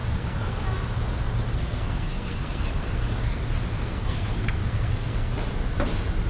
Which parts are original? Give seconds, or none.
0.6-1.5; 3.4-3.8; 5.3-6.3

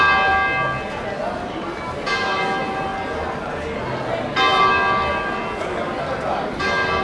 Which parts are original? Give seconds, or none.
0.0-7.0

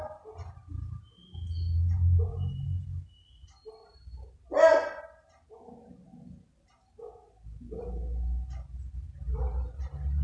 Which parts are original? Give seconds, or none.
0.0-10.2

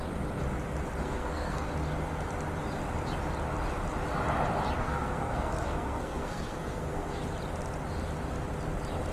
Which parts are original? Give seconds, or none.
0.0-1.0; 1.7-4.8; 7.2-9.1

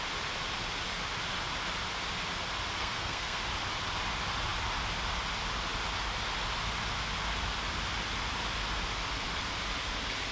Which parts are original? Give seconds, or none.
0.0-2.8; 3.4-10.3